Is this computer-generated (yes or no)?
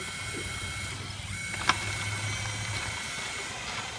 no